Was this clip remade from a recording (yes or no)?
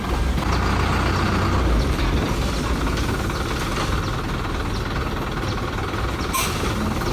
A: no